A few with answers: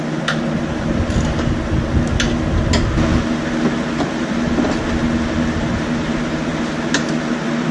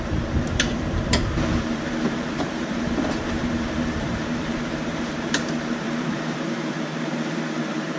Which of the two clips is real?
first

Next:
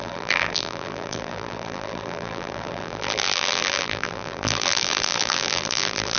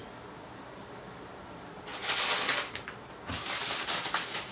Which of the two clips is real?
second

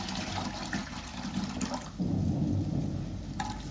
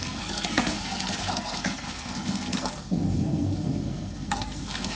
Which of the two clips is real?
first